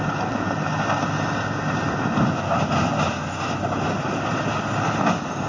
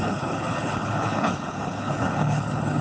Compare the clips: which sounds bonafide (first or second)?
first